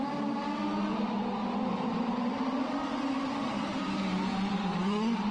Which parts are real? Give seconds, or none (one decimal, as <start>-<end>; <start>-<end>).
0.0-1.9

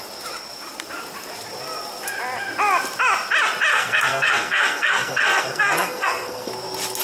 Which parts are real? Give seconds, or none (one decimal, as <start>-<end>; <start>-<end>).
0.0-3.7; 6.5-7.0

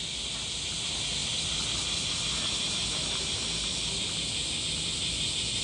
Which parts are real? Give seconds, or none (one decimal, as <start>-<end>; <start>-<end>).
0.0-5.6

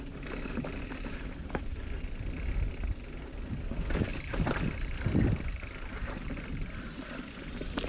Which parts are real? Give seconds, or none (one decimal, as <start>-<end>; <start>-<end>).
0.0-4.1; 7.3-7.9

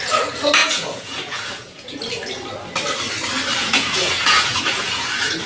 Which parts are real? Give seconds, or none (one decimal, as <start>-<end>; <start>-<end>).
0.0-0.6; 2.0-3.6

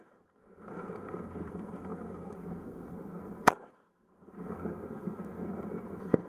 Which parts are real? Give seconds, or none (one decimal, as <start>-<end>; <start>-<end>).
none

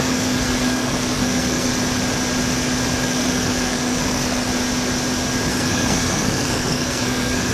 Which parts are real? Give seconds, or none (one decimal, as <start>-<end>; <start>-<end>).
1.7-3.0; 4.5-5.5